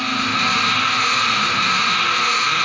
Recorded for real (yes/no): yes